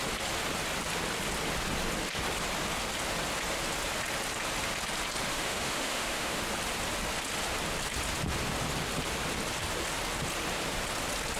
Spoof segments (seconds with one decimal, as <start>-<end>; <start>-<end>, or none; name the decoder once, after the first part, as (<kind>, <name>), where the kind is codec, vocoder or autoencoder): 5.3-6.4 (autoencoder, DAC-VAE)